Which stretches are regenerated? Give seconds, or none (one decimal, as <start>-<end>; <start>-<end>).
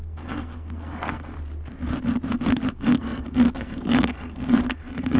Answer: 0.0-1.3; 2.7-5.2